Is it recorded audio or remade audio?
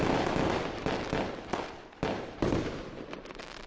recorded